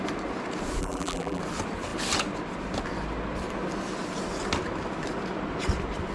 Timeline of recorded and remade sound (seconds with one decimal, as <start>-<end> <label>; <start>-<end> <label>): 0.0-0.8 recorded; 0.8-1.4 remade; 1.4-6.1 recorded